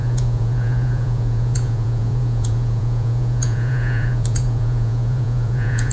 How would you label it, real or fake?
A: fake